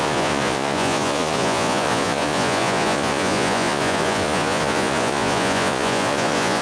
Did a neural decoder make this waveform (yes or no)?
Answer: yes